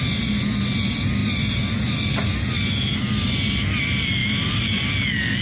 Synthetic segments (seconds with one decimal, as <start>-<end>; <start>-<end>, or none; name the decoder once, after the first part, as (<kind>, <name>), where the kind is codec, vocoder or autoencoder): 4.2-4.8 (vocoder, BigVGAN v2)